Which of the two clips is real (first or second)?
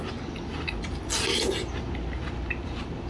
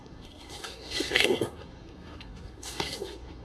first